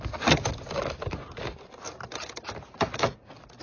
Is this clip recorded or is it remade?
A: recorded